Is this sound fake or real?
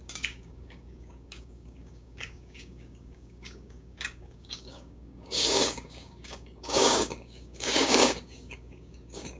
fake